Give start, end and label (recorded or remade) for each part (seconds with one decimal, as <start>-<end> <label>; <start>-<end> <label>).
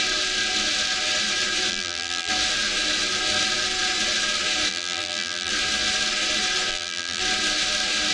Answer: 0.0-1.7 recorded; 1.7-2.3 remade; 2.3-4.7 recorded; 4.7-5.5 remade; 5.5-6.7 recorded; 6.7-7.2 remade; 7.2-8.1 recorded